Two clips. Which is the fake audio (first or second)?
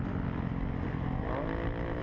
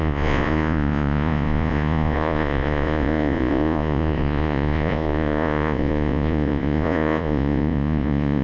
second